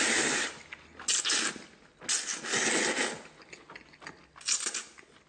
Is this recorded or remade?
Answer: recorded